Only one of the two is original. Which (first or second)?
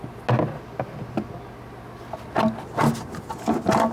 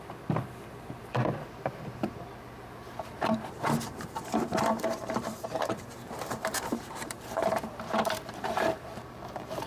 first